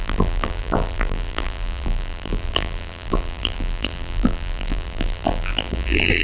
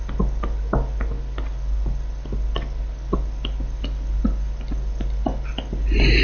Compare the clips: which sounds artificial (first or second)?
first